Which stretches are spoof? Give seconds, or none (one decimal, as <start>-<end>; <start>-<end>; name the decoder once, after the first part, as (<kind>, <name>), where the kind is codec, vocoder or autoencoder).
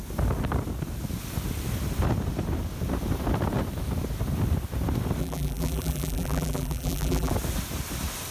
5.2-7.3 (vocoder, BigVGAN v2)